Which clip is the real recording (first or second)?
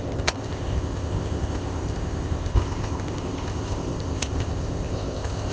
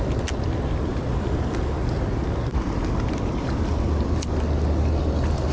second